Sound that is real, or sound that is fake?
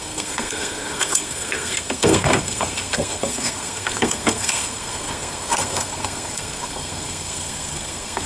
fake